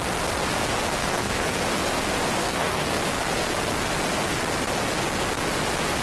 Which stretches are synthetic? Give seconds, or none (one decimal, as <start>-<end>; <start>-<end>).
1.0-1.6; 2.4-3.0